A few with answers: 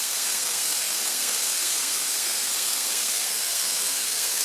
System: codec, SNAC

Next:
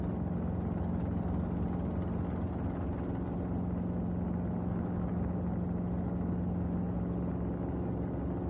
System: none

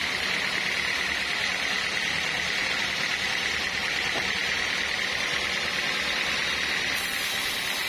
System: none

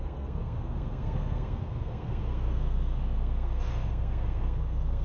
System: codec, SNAC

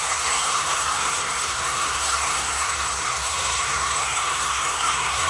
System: codec, SNAC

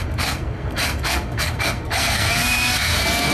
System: codec, SNAC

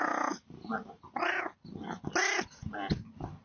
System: none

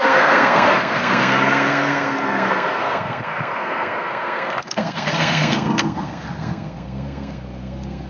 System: codec, SNAC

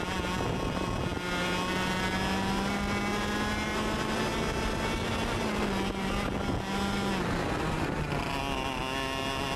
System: none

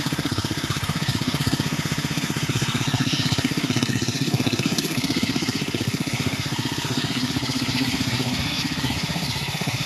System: codec, SNAC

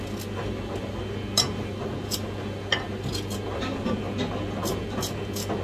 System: none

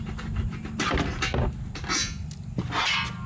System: none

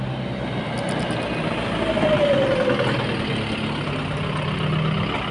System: none